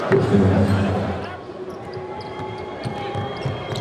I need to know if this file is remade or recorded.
remade